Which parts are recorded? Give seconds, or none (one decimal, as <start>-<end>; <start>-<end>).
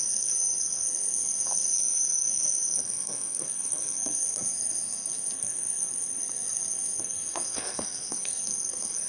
none